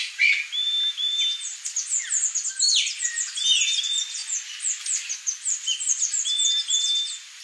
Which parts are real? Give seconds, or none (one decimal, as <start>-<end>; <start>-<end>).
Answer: 0.0-7.4